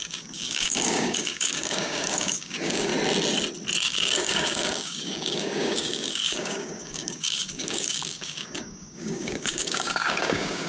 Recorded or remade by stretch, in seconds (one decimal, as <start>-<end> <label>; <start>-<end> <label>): 0.0-2.9 remade; 2.9-3.8 recorded; 3.8-10.7 remade

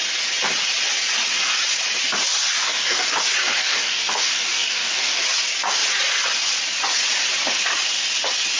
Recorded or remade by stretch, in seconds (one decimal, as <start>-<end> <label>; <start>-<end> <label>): 0.0-2.6 recorded; 2.6-3.1 remade; 3.1-3.6 recorded; 3.6-5.2 remade; 5.2-8.6 recorded